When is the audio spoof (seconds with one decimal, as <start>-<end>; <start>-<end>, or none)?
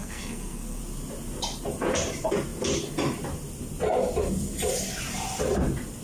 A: 0.0-0.8